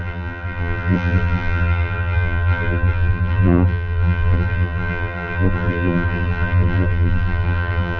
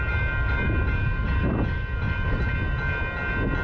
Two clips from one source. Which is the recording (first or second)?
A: second